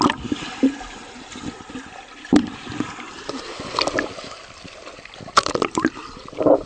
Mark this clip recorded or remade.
recorded